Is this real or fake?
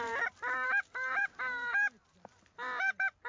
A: fake